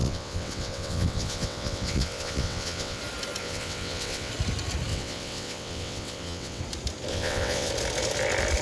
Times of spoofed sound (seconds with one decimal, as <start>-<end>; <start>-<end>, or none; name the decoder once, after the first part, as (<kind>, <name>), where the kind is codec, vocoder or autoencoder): 0.0-3.0 (vocoder, WaveNeXt); 3.4-4.3; 4.9-6.6; 7.1-7.7